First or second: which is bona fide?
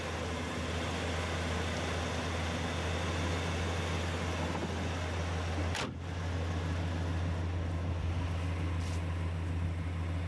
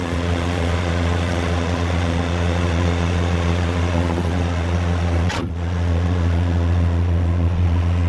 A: first